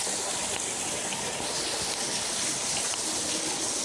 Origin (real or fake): real